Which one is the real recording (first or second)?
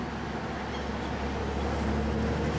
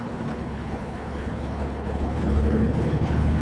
first